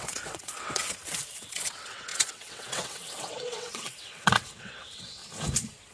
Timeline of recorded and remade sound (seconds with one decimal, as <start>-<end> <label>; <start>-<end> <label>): 0.0-5.2 remade; 5.2-5.9 recorded